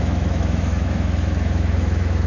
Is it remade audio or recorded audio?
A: remade